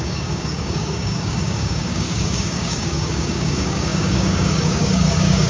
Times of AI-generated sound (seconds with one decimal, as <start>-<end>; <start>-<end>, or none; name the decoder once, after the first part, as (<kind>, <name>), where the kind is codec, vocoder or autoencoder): 0.0-5.5 (codec, DAC)